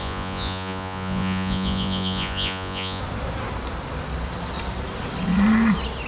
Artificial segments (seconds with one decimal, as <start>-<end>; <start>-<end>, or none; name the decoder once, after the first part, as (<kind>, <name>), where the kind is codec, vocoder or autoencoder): 0.0-3.0 (vocoder, Vocos)